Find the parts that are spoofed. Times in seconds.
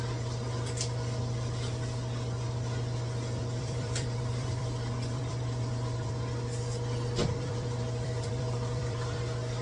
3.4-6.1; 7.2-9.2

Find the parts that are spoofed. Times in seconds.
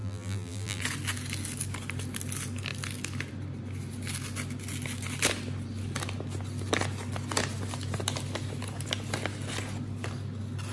0.0-0.8